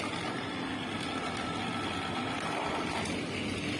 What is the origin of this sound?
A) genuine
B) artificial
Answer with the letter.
A